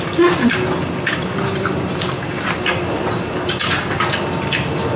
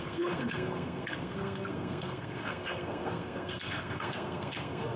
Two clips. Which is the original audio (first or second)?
first